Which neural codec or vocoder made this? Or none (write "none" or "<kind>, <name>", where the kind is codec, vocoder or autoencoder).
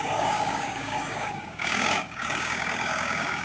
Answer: codec, DAC